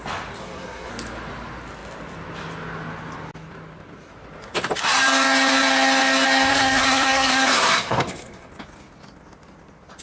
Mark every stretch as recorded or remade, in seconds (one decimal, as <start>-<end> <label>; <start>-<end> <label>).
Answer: 0.0-0.4 recorded; 0.4-0.9 remade; 0.9-6.5 recorded; 6.5-8.5 remade; 8.5-10.0 recorded